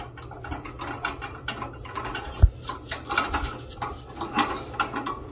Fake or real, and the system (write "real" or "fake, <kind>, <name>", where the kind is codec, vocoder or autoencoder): real